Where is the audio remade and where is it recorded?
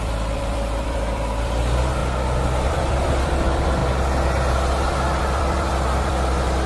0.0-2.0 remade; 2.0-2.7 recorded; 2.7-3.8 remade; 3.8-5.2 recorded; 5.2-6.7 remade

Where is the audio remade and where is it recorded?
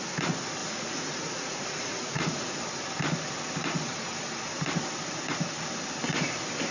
0.0-0.6 recorded; 0.6-2.6 remade; 2.6-6.7 recorded